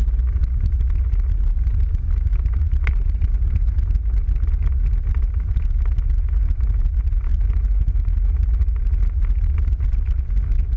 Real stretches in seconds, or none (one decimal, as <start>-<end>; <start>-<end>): 0.0-10.8